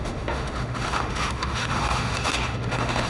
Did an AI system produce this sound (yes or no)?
yes